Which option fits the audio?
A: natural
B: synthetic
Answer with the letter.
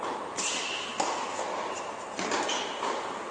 A